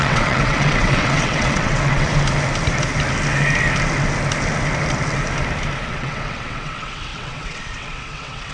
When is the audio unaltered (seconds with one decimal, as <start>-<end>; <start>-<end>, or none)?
2.1-5.9